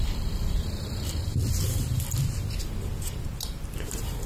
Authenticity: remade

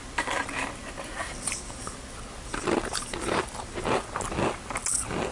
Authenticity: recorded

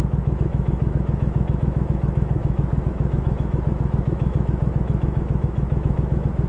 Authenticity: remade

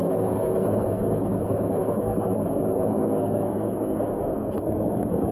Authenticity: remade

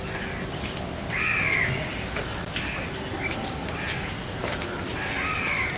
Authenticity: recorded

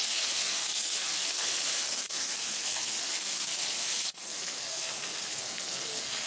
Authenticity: remade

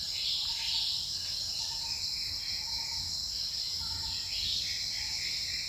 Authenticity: recorded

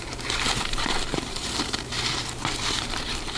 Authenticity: remade